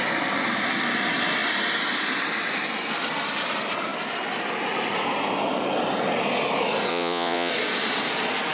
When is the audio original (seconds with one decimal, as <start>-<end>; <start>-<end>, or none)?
0.0-6.9; 7.5-8.5